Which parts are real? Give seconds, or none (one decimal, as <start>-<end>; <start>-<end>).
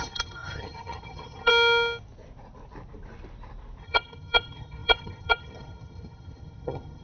1.5-3.8